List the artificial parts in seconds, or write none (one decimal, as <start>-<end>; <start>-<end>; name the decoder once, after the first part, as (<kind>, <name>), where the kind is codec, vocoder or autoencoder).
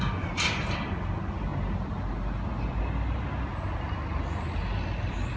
none